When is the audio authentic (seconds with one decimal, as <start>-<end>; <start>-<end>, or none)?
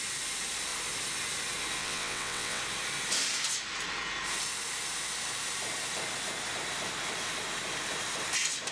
0.0-1.8; 2.6-8.7